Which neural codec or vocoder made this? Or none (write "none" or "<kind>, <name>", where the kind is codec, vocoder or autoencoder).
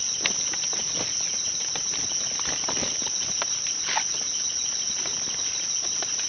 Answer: none